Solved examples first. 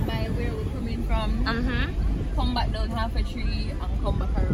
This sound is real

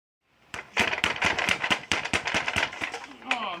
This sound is fake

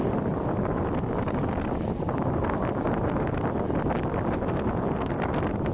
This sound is real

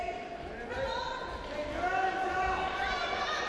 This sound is real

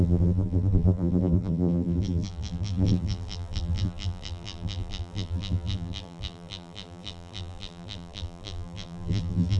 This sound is fake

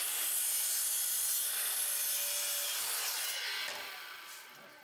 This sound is real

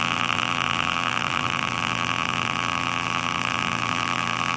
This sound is fake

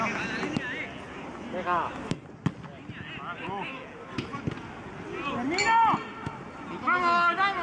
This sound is real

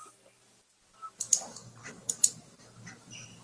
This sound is real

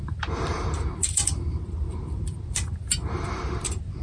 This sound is fake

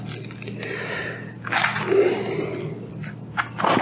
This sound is real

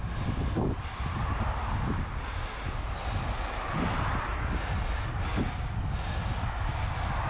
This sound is real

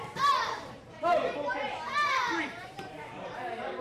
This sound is fake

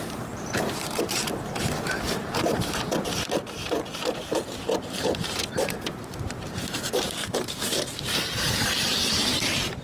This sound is fake